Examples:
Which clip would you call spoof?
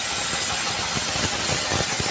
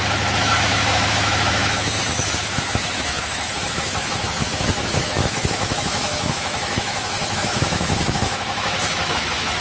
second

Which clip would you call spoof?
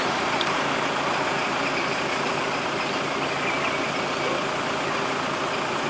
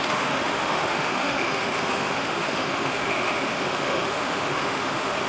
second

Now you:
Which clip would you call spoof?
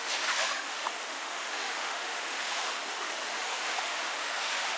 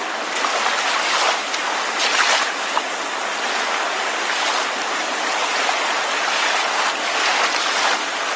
first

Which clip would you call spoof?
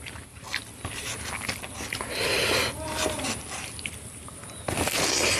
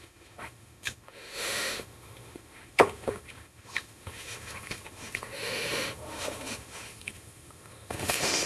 second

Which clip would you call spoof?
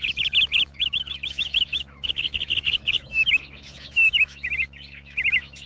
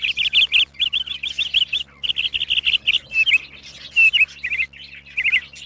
first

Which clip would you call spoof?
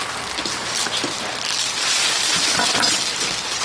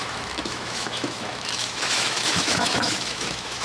second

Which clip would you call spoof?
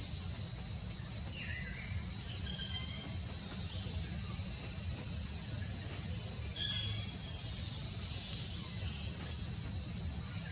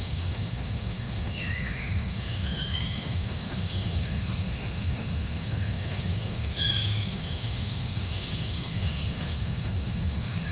second